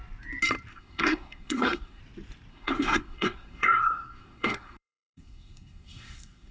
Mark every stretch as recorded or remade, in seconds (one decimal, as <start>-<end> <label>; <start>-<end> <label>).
0.0-0.7 recorded; 0.7-2.0 remade; 2.0-2.5 recorded; 2.5-6.5 remade